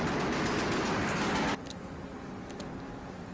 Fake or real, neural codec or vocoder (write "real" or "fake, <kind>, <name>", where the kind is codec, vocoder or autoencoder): real